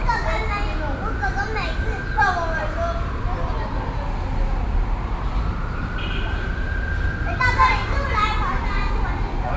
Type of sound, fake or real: real